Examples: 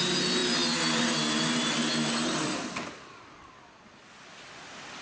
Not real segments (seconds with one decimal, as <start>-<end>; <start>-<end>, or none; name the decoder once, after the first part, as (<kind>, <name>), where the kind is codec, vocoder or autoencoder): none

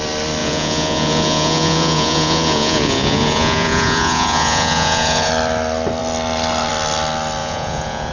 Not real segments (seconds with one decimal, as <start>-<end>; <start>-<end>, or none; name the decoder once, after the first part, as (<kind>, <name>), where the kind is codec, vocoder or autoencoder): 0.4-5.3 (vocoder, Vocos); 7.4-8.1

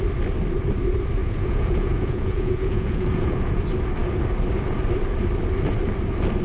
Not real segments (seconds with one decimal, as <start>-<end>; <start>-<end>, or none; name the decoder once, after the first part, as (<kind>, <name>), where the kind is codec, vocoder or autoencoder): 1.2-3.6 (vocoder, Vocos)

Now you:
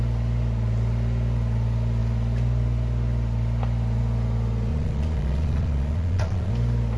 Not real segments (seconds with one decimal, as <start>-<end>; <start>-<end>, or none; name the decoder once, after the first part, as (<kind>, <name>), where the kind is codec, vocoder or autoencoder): 4.7-6.5 (vocoder, Vocos)